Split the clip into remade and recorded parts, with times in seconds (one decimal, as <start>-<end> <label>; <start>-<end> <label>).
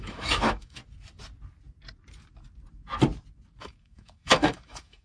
0.0-0.8 remade; 0.8-3.6 recorded; 3.6-5.0 remade